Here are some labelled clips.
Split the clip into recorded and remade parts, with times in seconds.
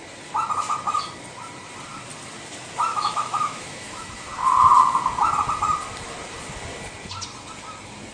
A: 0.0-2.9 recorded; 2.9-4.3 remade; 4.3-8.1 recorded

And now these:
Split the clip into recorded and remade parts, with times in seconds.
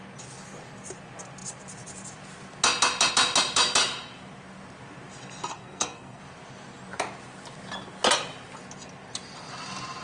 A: 0.0-5.5 recorded; 5.5-6.2 remade; 6.2-10.0 recorded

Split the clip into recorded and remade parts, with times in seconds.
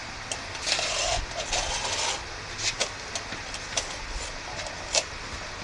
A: 0.0-5.6 recorded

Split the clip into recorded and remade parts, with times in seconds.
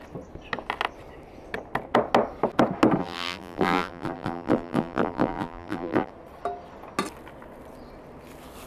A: 0.0-3.0 recorded; 3.0-6.1 remade; 6.1-8.7 recorded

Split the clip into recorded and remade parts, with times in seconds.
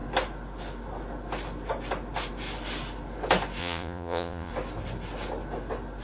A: 0.0-3.6 recorded; 3.6-4.5 remade; 4.5-6.0 recorded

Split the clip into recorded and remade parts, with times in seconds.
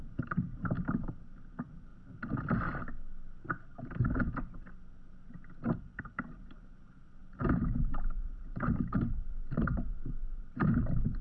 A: 0.0-1.9 remade; 1.9-6.0 recorded; 6.0-11.2 remade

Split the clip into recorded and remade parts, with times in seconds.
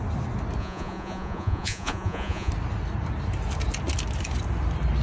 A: 0.0-0.6 recorded; 0.6-2.5 remade; 2.5-5.0 recorded